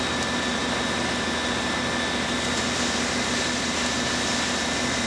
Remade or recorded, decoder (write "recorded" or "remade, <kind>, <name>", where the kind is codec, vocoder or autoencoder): recorded